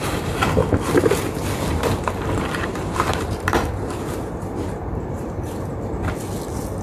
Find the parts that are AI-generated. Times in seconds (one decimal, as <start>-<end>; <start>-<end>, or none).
0.0-0.6; 1.7-5.7

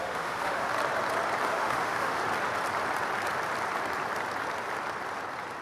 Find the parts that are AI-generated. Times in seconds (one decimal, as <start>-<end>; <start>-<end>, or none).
0.0-0.7; 1.5-2.2

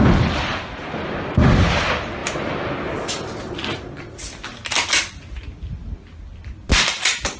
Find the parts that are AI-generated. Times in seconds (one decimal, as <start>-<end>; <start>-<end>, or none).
none

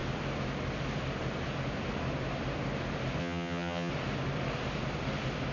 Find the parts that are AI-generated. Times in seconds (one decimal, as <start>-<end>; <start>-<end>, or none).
3.2-3.9

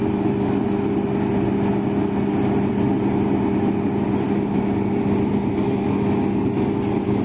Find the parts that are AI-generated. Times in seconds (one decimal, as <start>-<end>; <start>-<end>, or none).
none

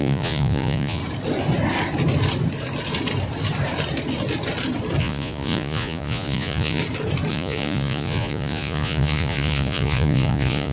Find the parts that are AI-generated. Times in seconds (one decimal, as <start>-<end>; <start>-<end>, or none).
0.0-1.0; 5.0-6.8; 7.3-10.7